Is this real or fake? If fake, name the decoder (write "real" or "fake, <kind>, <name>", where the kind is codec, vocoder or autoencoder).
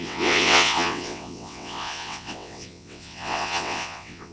fake, vocoder, WaveNeXt